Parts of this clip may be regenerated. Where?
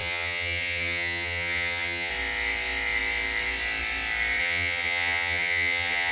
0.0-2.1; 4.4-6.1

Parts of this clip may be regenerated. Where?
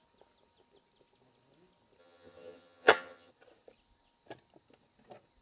2.0-3.3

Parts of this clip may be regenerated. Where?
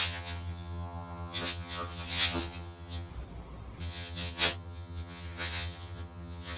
0.0-3.1; 3.8-6.6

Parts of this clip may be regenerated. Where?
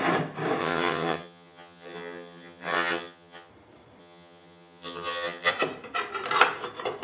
0.6-3.5; 4.0-5.5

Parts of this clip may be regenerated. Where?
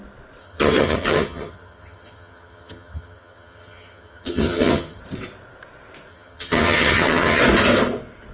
0.4-5.0; 6.1-7.4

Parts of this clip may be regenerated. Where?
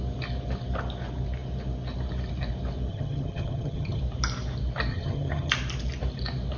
2.9-4.0; 4.9-5.5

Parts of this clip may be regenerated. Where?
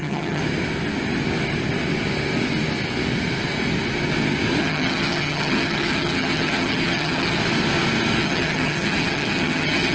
0.0-0.4; 4.6-7.4; 8.2-9.9